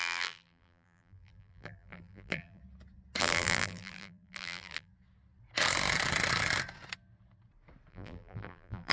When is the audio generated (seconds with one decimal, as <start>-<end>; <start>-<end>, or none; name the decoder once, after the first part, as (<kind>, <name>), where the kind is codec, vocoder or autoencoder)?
0.0-2.6 (vocoder, BigVGAN v2); 3.2-4.9; 7.9-8.9